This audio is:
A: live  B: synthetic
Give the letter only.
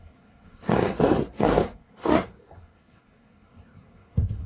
B